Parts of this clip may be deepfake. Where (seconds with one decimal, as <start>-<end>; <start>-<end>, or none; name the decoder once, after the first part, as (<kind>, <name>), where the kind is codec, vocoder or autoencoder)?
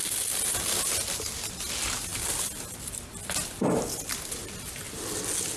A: 2.1-4.2 (vocoder, BigVGAN v2)